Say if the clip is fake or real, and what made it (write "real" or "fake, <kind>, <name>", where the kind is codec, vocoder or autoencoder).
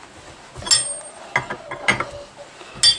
real